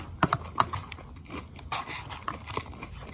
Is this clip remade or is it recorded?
recorded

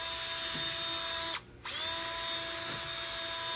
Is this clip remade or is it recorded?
recorded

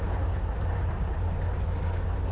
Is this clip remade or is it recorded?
recorded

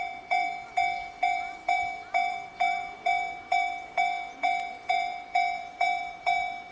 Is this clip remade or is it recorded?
remade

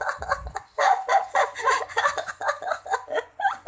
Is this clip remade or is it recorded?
remade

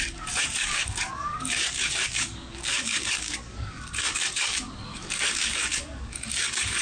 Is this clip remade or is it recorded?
remade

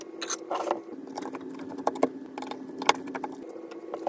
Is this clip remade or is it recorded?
recorded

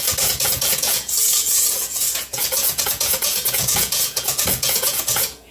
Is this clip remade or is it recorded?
remade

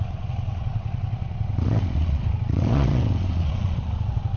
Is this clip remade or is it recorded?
remade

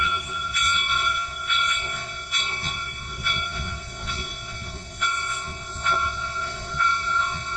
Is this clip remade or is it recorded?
remade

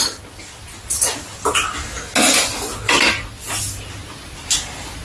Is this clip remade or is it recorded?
recorded